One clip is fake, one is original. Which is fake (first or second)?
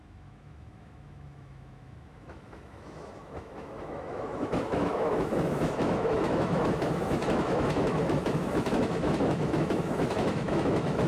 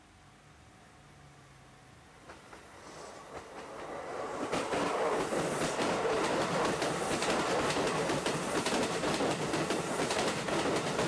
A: first